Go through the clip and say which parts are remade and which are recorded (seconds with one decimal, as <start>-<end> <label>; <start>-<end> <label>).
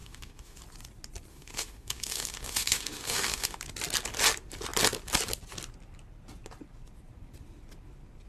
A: 0.0-0.6 remade; 0.6-1.3 recorded; 1.3-3.6 remade; 3.6-8.3 recorded